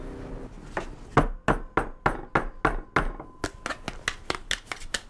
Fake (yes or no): no